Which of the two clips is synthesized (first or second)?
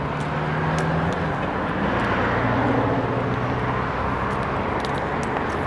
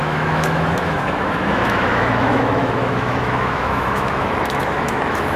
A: second